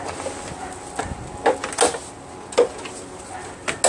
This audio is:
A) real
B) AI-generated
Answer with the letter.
A